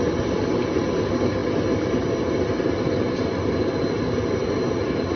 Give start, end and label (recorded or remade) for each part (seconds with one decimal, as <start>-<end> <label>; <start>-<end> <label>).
0.0-5.2 recorded